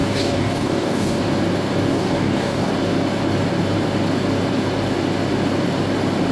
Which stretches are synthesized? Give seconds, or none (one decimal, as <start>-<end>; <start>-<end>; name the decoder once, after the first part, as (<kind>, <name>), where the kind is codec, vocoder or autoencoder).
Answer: 0.0-1.2 (codec, DAC); 1.9-2.7